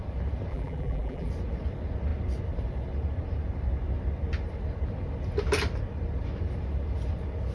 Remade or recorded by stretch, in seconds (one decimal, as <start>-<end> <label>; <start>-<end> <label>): 0.0-0.5 recorded; 0.5-1.3 remade; 1.3-7.5 recorded